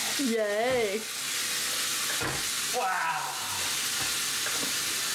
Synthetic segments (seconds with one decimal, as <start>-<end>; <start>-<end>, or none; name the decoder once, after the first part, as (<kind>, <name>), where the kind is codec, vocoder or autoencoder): none